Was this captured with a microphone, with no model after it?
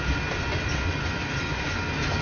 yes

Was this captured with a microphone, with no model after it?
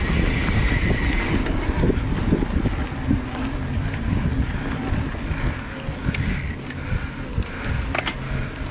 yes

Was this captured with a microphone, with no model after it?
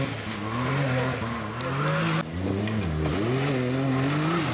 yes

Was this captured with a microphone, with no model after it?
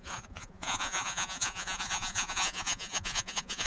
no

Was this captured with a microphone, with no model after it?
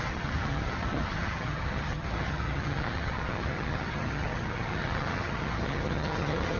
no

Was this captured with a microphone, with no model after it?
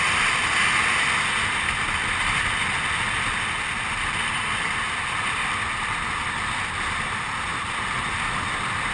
yes